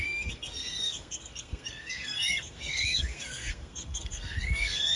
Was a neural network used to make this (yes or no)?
yes